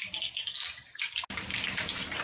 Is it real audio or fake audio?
real